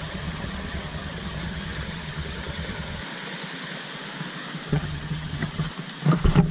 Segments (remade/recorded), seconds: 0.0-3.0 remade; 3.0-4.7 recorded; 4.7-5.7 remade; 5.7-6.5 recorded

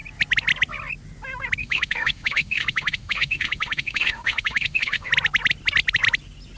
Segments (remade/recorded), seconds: 0.0-1.6 recorded; 1.6-5.1 remade; 5.1-6.6 recorded

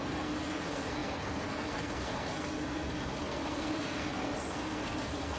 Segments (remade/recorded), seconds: 0.0-5.4 remade

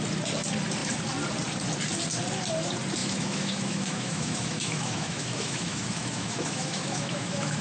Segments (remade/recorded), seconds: 0.0-3.0 recorded; 3.0-7.6 remade

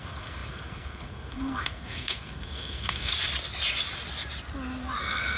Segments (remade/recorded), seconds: 0.0-3.1 remade; 3.1-5.0 recorded; 5.0-5.4 remade

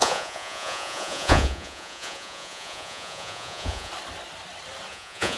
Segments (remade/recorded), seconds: 0.0-3.9 remade; 3.9-4.9 recorded; 4.9-5.4 remade

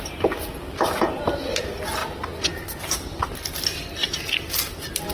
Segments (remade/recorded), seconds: 0.0-5.1 recorded